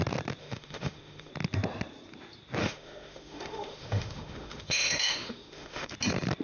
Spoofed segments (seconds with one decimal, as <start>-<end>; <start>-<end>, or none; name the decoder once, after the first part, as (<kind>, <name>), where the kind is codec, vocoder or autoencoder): 0.4-1.3 (autoencoder, DAC-VAE); 2.6-5.9